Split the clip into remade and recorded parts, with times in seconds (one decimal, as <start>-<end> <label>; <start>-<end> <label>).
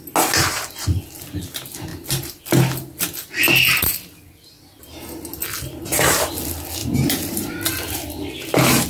0.0-1.9 recorded; 1.9-2.4 remade; 2.4-6.8 recorded; 6.8-7.5 remade; 7.5-8.9 recorded